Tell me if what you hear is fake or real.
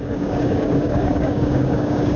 fake